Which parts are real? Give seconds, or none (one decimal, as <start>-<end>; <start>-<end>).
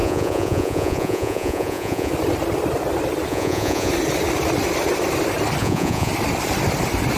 2.1-3.3; 3.9-5.6; 6.1-7.2